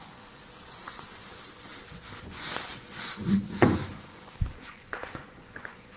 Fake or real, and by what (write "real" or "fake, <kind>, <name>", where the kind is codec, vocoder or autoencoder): fake, vocoder, Vocos